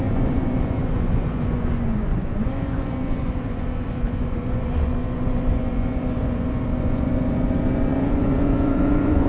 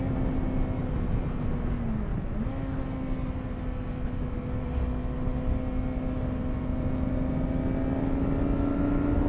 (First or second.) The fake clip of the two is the first